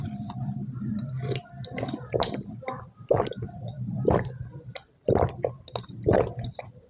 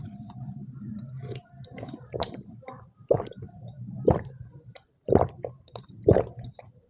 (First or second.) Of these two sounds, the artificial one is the second